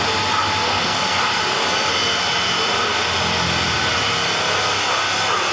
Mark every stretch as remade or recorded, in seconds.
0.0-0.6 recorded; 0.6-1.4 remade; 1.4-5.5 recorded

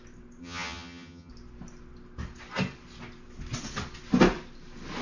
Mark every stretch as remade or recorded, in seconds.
0.0-0.4 recorded; 0.4-1.3 remade; 1.3-5.0 recorded